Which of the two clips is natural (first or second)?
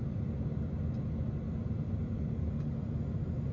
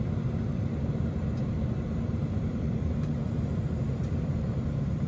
first